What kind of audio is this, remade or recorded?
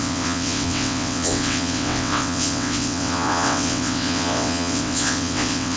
remade